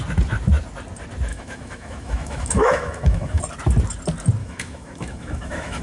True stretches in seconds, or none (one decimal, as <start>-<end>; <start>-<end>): 0.0-1.3; 3.4-4.4